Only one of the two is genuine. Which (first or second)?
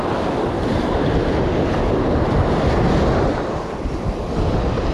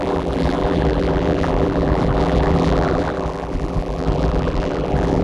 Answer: first